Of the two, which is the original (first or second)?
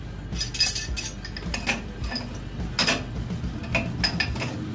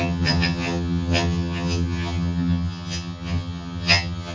first